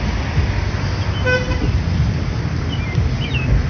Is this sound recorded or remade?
recorded